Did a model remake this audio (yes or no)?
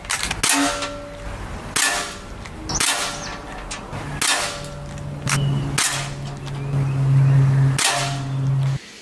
no